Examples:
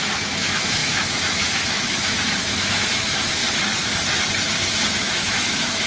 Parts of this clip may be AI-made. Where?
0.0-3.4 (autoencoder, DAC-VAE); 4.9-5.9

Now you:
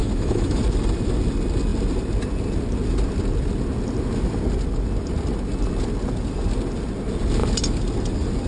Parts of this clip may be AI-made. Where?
0.0-0.6 (autoencoder, DAC-VAE)

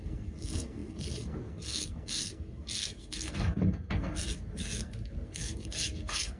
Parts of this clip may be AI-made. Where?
0.0-6.4 (codec, SNAC)

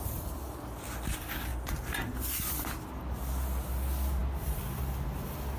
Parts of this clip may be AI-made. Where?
1.5-3.0 (vocoder, BigVGAN v2); 4.2-4.8